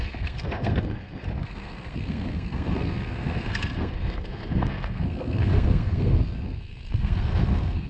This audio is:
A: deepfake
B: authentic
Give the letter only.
A